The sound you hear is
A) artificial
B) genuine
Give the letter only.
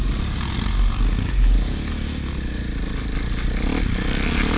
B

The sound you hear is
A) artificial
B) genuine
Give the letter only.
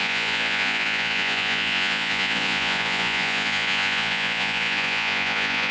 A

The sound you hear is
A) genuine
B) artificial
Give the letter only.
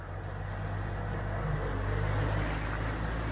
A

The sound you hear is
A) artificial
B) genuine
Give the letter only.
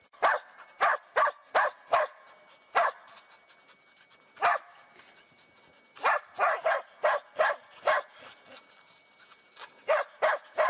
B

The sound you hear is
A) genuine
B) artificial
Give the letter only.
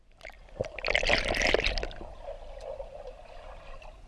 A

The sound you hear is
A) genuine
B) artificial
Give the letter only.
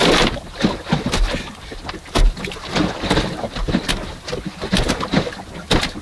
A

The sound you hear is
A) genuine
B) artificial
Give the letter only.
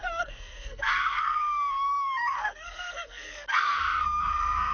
B